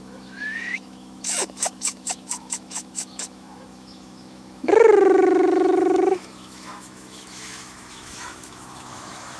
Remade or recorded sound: remade